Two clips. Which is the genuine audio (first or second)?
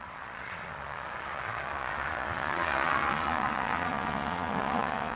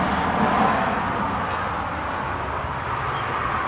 second